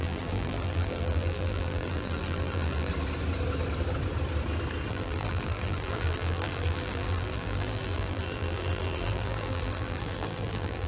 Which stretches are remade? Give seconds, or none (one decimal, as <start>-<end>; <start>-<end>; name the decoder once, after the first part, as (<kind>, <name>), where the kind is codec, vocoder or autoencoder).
0.0-2.9 (vocoder, BigVGAN v2); 4.9-10.9